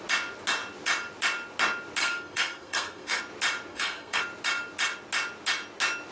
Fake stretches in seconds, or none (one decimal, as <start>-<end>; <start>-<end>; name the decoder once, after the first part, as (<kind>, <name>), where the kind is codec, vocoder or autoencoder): 2.0-3.2 (codec, SNAC); 3.7-4.2